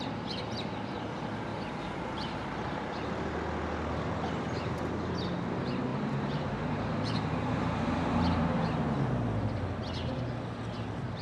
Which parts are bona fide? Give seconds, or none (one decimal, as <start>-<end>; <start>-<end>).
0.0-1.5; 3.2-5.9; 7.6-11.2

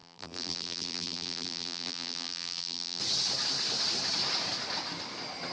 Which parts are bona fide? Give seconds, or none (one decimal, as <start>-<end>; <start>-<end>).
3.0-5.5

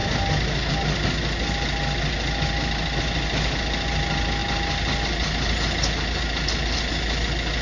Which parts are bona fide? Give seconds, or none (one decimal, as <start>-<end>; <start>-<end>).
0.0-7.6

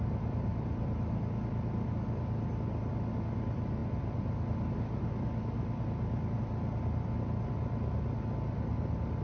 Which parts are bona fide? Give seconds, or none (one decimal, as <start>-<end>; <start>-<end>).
0.0-9.2